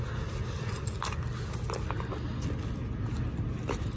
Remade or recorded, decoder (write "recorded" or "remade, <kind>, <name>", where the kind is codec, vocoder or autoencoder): recorded